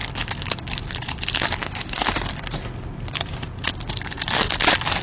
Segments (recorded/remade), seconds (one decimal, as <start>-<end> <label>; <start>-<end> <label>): 0.0-1.6 recorded; 1.6-2.2 remade; 2.2-5.0 recorded